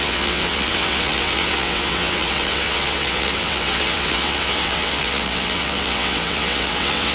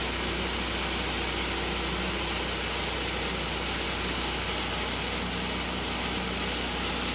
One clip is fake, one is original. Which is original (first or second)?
second